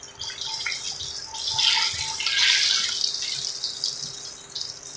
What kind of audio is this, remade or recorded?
recorded